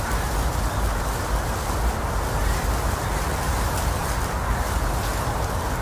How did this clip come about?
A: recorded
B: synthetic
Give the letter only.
A